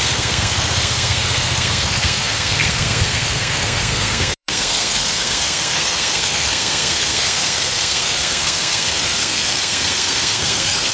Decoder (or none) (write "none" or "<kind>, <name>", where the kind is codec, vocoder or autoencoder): codec, SNAC